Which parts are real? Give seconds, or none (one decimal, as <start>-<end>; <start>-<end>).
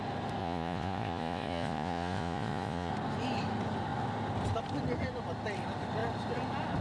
0.0-0.4; 2.9-6.8